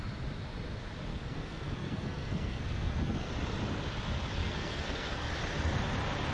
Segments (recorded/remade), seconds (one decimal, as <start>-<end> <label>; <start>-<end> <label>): 0.0-1.1 recorded; 1.1-3.3 remade; 3.3-4.4 recorded; 4.4-5.3 remade; 5.3-6.3 recorded